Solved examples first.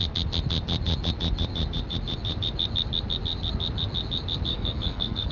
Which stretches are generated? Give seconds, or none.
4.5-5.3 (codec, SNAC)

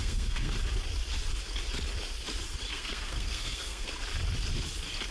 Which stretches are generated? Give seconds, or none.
0.0-0.5 (codec, SNAC); 2.7-3.9

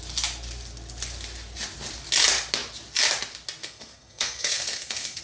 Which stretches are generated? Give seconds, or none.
3.6-5.2 (codec, SNAC)

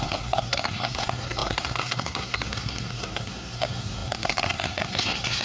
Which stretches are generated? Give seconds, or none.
0.0-5.4 (codec, SNAC)

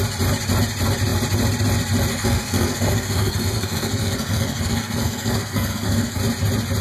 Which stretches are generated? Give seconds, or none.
2.1-6.2 (codec, SNAC)

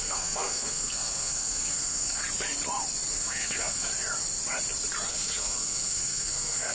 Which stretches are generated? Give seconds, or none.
0.0-2.2 (codec, SNAC); 3.1-3.9; 5.1-6.7

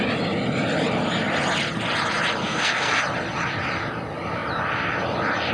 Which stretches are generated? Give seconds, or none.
2.4-3.0 (codec, SNAC)